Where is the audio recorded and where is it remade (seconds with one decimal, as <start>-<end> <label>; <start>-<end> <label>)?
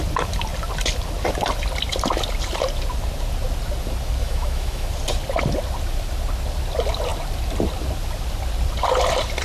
0.0-4.2 recorded; 4.2-4.9 remade; 4.9-9.4 recorded